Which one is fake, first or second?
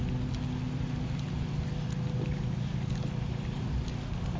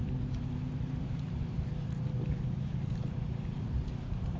second